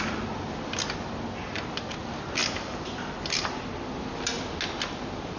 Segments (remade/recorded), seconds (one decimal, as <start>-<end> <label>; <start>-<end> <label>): 0.0-5.4 recorded